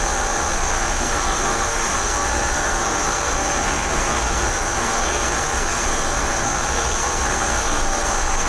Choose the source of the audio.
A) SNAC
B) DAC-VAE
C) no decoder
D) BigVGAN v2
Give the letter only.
A